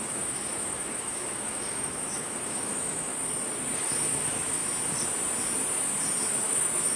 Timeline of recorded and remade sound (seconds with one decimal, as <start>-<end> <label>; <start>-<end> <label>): 0.0-3.1 remade; 3.1-4.1 recorded; 4.1-4.6 remade; 4.6-6.3 recorded; 6.3-7.0 remade